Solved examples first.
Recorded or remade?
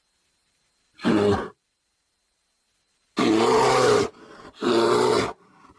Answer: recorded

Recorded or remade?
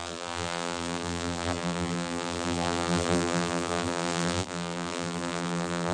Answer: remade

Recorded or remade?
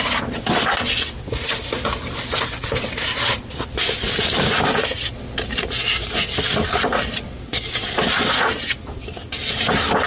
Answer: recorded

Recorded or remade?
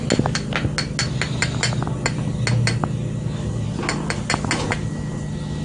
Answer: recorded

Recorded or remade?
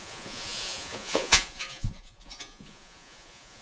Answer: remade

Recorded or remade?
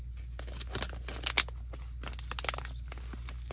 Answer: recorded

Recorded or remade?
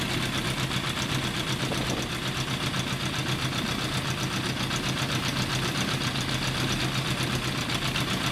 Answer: recorded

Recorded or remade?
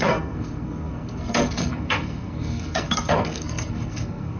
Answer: remade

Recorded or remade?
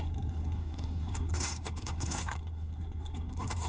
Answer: remade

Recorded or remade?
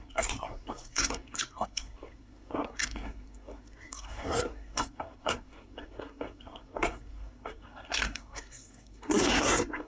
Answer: remade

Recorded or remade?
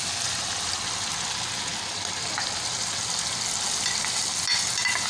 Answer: recorded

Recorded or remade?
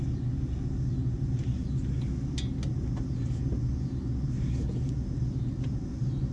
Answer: recorded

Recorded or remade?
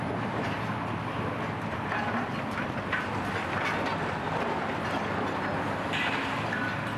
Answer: recorded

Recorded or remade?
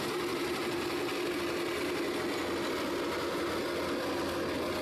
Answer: recorded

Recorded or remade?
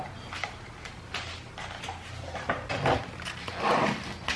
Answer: recorded